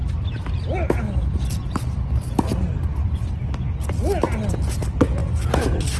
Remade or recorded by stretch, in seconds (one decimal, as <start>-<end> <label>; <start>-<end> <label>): 0.0-6.0 recorded